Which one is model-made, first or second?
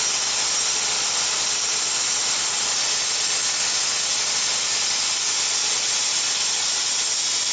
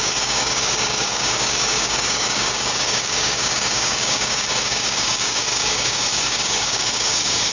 second